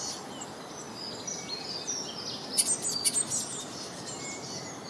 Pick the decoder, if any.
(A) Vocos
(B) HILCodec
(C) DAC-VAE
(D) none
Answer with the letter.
D